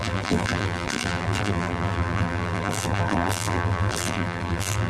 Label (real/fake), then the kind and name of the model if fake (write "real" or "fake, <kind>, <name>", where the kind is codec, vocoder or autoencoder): fake, vocoder, BigVGAN v2